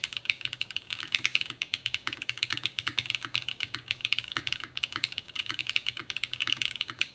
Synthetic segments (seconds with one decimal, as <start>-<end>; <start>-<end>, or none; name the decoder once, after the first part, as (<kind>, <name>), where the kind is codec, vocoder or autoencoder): 0.0-7.1 (codec, DAC)